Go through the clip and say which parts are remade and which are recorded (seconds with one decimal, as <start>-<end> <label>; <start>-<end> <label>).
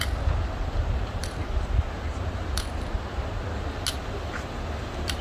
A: 0.0-1.2 recorded; 1.2-2.7 remade; 2.7-4.0 recorded; 4.0-5.2 remade